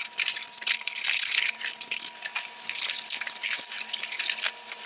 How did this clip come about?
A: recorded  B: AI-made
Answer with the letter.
A